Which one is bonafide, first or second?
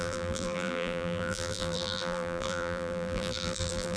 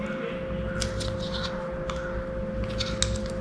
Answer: second